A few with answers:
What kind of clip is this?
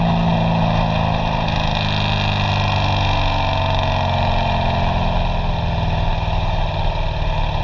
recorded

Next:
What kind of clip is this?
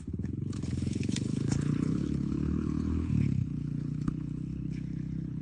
remade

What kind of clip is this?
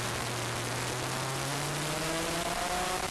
recorded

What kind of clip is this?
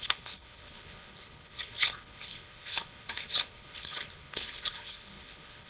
remade